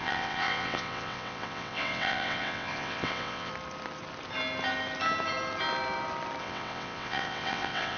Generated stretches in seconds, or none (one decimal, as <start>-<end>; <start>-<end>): 0.0-3.5; 6.4-8.0